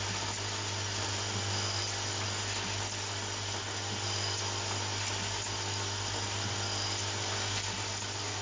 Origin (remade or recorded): recorded